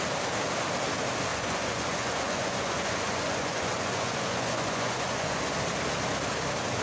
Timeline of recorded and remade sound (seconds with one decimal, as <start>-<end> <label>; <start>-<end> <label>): 0.0-1.3 recorded; 1.3-5.4 remade; 5.4-6.8 recorded